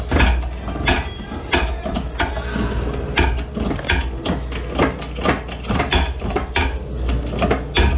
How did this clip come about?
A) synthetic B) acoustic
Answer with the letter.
B